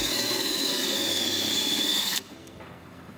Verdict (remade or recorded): remade